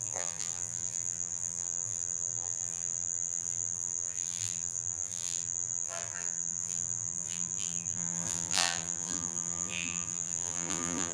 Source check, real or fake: fake